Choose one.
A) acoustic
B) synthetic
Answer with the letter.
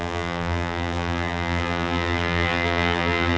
B